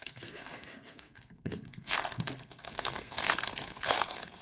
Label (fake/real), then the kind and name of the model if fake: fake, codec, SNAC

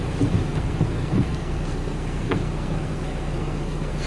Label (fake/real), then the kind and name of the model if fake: fake, codec, SNAC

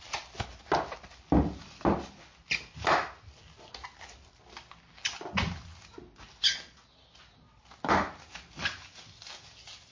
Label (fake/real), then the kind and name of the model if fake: real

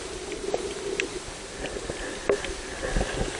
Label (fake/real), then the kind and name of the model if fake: real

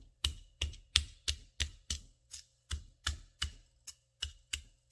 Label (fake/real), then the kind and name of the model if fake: real